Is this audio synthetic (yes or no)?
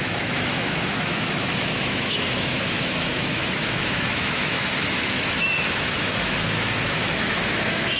yes